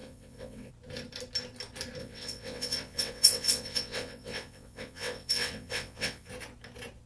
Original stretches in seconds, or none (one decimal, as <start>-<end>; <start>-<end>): 0.7-2.0; 6.3-7.1